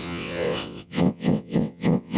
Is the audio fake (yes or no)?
yes